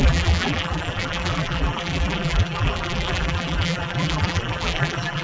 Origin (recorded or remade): remade